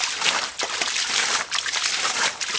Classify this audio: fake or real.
real